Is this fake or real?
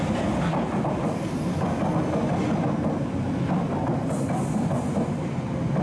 real